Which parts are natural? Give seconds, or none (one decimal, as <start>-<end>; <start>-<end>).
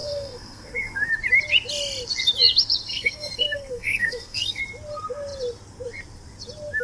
1.1-2.9; 4.6-6.8